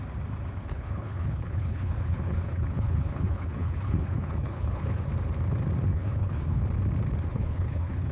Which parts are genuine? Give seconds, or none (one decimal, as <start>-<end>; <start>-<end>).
0.0-0.7; 5.1-5.9; 6.6-7.3